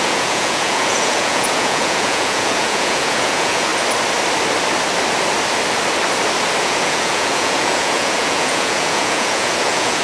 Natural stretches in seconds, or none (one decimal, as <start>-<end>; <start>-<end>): 3.7-6.6